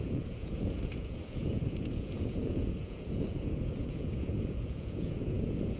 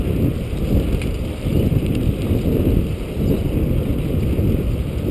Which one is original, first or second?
second